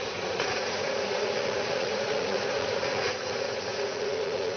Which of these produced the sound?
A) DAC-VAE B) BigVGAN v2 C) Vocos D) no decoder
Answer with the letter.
C